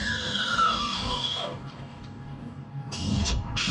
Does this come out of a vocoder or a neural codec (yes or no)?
yes